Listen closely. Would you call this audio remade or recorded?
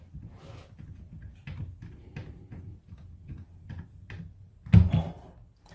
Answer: recorded